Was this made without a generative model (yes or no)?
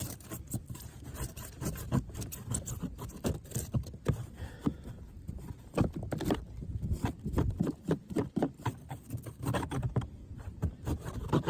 no